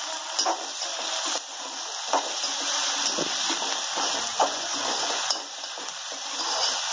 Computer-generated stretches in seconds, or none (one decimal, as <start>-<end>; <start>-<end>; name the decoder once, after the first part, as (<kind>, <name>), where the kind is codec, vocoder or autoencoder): 4.3-5.5 (vocoder, Vocos)